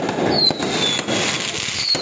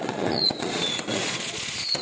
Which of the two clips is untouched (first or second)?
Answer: first